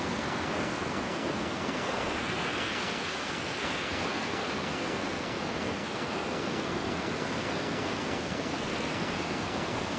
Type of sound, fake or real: fake